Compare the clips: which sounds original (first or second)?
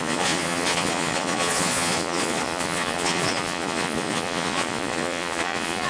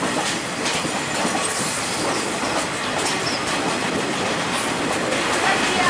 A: second